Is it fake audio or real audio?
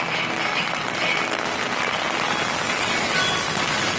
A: real